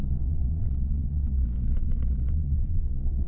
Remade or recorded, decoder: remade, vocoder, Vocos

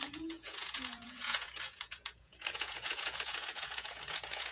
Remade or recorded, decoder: remade, vocoder, Vocos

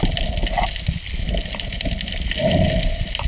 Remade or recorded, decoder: recorded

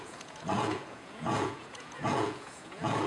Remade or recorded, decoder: remade, vocoder, Vocos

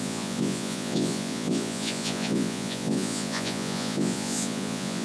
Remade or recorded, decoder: remade, vocoder, Vocos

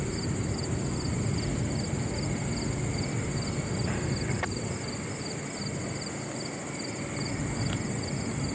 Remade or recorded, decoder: recorded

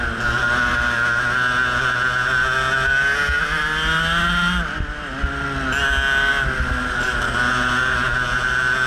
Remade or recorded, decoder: recorded